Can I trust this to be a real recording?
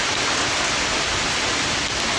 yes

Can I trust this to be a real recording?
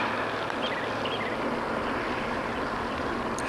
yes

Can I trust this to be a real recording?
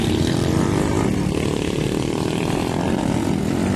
no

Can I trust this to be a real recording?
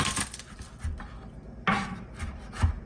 yes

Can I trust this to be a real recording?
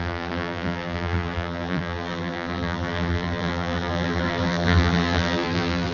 no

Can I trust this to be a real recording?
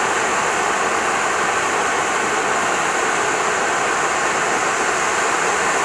yes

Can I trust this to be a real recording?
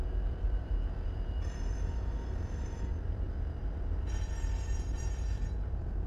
no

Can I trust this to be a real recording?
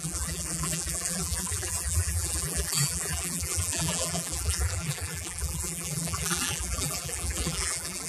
no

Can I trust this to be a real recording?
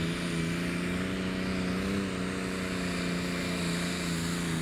yes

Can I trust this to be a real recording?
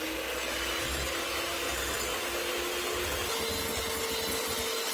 yes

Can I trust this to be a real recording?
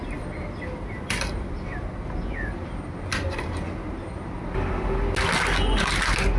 yes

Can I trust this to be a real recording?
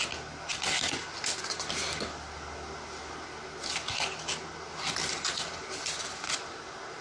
yes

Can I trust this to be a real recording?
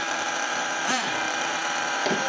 no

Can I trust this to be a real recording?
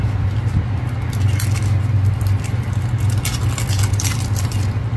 yes